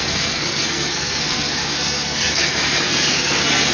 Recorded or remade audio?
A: remade